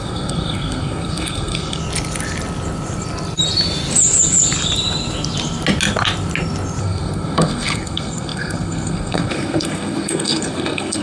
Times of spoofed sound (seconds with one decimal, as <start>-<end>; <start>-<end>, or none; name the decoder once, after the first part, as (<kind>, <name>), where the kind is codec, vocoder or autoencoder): 0.0-1.8 (codec, SNAC); 6.8-11.0

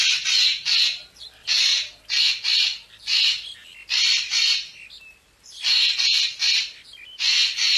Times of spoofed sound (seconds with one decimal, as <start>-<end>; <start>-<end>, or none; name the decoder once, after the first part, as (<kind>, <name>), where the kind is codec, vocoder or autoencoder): 1.0-1.7 (vocoder, BigVGAN v2)

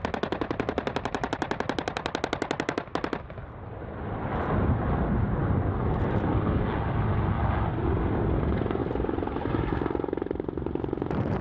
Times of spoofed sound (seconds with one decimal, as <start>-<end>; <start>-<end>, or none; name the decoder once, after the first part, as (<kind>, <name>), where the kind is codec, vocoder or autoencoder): 8.8-11.4 (vocoder, BigVGAN v2)

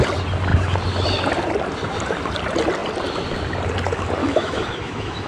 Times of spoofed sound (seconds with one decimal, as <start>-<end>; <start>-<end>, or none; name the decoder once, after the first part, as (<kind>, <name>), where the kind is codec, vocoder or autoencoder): 4.2-5.3 (autoencoder, DAC-VAE)